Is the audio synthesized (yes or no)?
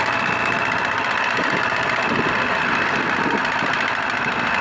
no